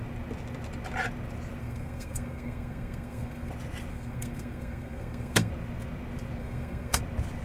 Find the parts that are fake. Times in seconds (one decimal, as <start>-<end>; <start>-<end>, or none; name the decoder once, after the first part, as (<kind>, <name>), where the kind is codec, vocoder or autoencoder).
1.6-3.5 (codec, SNAC); 3.9-5.5; 6.4-7.0